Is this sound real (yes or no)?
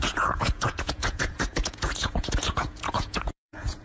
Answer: no